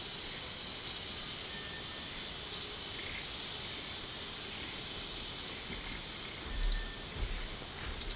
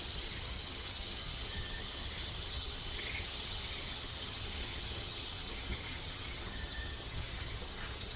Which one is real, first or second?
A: first